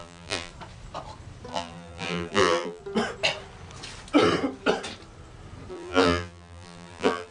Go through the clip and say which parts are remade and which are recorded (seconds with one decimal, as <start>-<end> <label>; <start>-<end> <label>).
0.0-0.5 remade; 0.5-1.5 recorded; 1.5-2.8 remade; 2.8-5.7 recorded; 5.7-7.3 remade